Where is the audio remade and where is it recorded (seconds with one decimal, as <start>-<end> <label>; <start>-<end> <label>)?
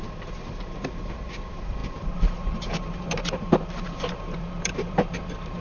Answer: 0.0-5.6 remade